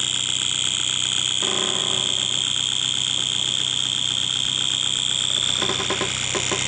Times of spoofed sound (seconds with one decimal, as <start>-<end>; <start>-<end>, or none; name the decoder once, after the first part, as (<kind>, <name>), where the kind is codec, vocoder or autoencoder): none